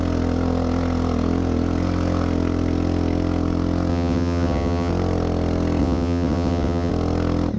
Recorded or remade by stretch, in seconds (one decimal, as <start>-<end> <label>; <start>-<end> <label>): 0.0-3.9 recorded; 3.9-4.9 remade; 4.9-5.8 recorded; 5.8-6.9 remade; 6.9-7.6 recorded